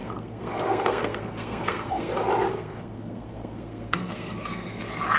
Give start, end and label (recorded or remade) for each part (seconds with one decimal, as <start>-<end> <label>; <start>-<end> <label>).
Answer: 0.0-2.1 remade; 2.1-2.5 recorded; 2.5-4.8 remade; 4.8-5.2 recorded

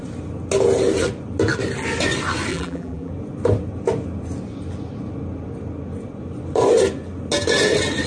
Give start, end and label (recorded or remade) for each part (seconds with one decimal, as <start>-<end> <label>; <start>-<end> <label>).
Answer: 0.0-2.5 recorded; 2.5-3.1 remade; 3.1-8.1 recorded

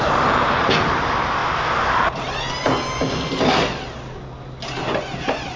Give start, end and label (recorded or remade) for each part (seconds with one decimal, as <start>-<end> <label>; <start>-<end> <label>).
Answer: 0.0-5.6 recorded

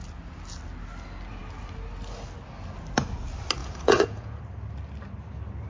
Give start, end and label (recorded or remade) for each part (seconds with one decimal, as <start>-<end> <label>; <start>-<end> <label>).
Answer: 0.0-3.6 recorded; 3.6-4.4 remade; 4.4-5.7 recorded

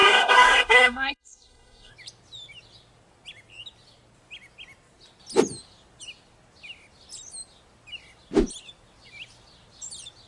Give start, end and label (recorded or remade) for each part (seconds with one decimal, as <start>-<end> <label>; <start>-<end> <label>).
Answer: 0.0-1.9 remade; 1.9-10.3 recorded

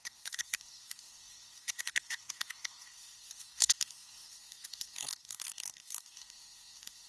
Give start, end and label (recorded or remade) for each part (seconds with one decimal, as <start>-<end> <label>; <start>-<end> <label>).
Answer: 0.0-7.1 remade

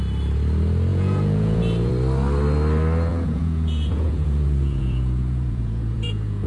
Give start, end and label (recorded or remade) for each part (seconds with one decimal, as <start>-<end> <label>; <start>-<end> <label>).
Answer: 0.0-0.9 recorded; 0.9-1.9 remade; 1.9-3.1 recorded; 3.1-6.5 remade

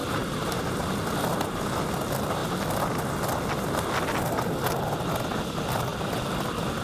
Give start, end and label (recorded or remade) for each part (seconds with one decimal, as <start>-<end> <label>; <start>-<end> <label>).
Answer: 0.0-6.8 recorded